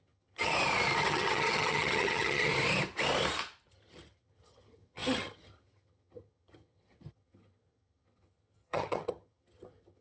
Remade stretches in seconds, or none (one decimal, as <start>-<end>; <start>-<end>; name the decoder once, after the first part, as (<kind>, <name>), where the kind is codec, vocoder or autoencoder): 0.0-0.5 (vocoder, HiFi-GAN); 1.1-2.5; 3.7-10.0